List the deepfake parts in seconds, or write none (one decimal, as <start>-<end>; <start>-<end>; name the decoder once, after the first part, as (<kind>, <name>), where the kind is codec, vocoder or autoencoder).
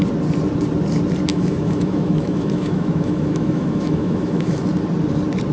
1.3-4.6 (autoencoder, DAC-VAE)